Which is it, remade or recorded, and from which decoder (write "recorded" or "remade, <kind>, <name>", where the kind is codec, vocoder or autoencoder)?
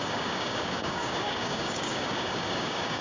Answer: remade, codec, DAC